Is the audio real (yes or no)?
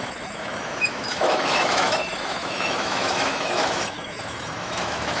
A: no